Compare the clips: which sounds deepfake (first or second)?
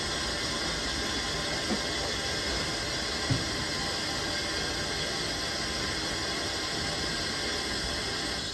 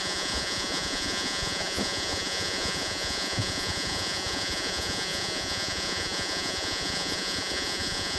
second